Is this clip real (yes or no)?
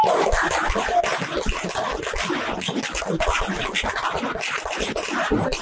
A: yes